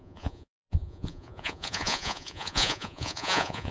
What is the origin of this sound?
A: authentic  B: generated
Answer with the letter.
B